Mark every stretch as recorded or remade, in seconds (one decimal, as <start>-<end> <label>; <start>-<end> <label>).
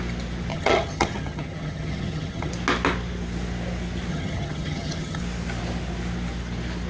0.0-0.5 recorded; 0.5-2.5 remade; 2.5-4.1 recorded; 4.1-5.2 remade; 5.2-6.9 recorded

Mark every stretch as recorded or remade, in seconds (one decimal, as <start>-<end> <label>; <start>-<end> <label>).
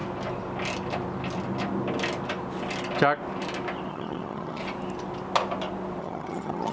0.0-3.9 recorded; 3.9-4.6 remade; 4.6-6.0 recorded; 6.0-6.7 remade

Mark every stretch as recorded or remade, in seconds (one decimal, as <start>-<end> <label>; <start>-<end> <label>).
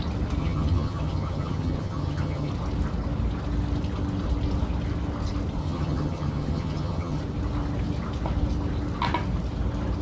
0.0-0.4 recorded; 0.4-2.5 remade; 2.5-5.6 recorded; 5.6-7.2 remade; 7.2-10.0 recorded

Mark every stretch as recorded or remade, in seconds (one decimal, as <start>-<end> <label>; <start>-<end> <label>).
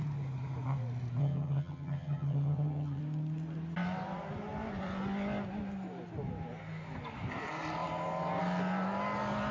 0.0-1.2 recorded; 1.2-3.0 remade; 3.0-9.5 recorded